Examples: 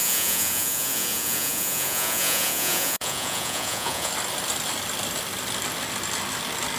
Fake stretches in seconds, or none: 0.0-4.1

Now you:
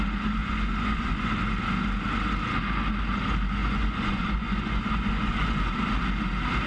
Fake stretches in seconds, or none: 0.4-1.3; 3.6-5.7

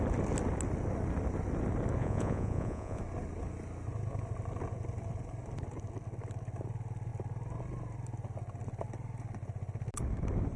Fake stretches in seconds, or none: 2.0-3.0

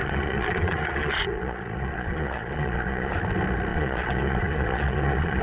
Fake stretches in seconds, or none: 0.0-3.1; 3.7-5.4

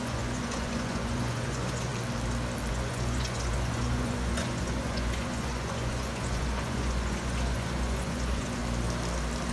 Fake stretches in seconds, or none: 0.0-1.9; 2.7-8.6